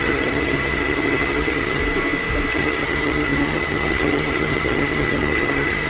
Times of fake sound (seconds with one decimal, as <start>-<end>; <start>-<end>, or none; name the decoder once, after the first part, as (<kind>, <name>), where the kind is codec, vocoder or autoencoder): 0.0-1.8 (vocoder, HiFi-GAN); 2.5-5.9